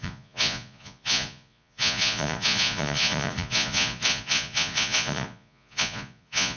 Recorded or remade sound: remade